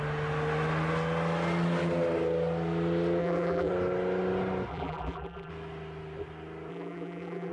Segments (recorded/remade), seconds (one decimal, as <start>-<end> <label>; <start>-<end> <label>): 0.0-3.2 recorded; 3.2-3.7 remade; 3.7-4.7 recorded; 4.7-5.5 remade; 5.5-6.7 recorded; 6.7-7.5 remade